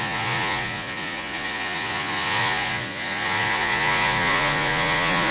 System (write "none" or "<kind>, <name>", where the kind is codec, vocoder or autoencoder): vocoder, Vocos